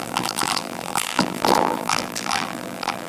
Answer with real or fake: fake